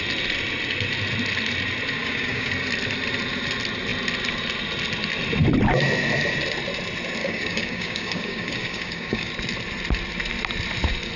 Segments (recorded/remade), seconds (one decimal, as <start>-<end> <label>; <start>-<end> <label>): 0.0-2.0 recorded; 2.0-2.5 remade; 2.5-7.2 recorded; 7.2-9.3 remade; 9.3-11.2 recorded